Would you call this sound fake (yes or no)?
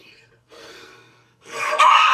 yes